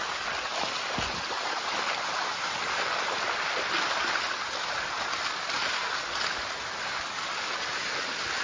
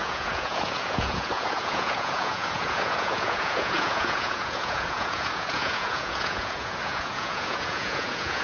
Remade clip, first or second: second